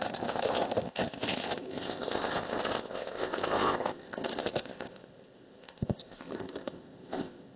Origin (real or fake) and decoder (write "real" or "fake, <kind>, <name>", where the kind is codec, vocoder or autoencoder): fake, codec, ZipCodec